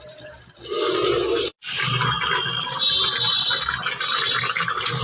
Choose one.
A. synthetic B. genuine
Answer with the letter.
B